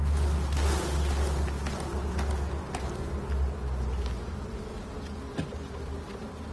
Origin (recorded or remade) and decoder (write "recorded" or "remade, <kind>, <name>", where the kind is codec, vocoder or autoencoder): recorded